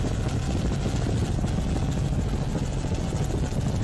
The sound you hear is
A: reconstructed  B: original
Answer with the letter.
B